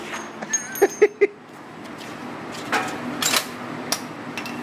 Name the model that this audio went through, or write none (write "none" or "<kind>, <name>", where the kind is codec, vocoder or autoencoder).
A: none